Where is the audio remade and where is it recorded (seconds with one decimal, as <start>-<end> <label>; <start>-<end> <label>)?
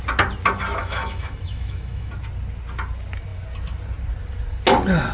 0.0-0.8 recorded; 0.8-2.1 remade; 2.1-5.1 recorded